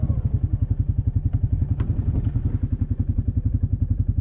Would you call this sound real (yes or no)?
yes